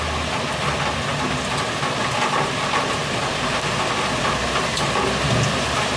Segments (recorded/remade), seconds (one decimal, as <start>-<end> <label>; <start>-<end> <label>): 0.0-6.0 recorded